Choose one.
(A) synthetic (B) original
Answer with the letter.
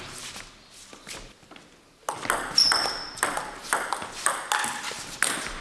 B